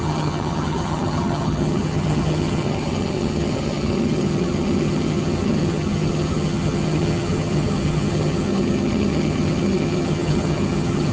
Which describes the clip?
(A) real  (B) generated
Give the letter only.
B